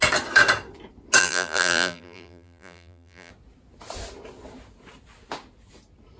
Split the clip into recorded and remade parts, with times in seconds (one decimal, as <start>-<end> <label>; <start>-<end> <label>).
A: 0.0-1.2 recorded; 1.2-3.3 remade; 3.3-6.2 recorded